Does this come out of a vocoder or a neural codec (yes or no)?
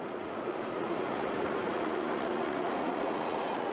yes